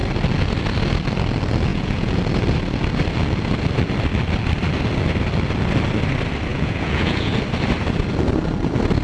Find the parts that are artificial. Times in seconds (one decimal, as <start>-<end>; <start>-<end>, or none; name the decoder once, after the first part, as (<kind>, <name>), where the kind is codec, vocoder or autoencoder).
1.7-2.2 (vocoder, Vocos); 6.5-7.3